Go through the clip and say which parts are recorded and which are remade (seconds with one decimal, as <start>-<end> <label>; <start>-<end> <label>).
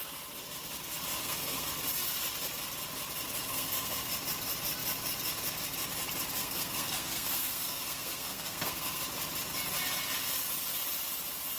0.0-1.2 recorded; 1.2-1.7 remade; 1.7-3.5 recorded; 3.5-4.1 remade; 4.1-6.4 recorded; 6.4-9.0 remade; 9.0-11.6 recorded